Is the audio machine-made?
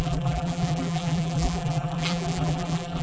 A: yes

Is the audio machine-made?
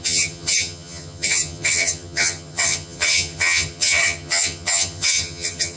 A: yes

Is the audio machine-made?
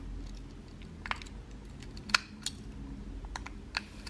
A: no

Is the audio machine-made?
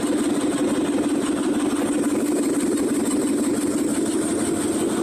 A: no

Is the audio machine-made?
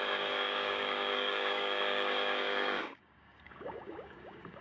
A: yes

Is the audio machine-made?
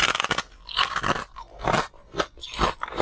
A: no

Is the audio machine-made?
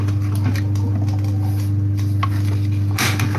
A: no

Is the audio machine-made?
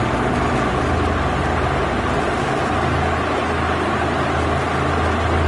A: no